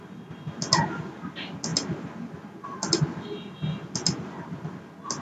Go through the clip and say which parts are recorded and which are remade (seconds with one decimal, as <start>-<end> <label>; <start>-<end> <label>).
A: 0.0-5.2 recorded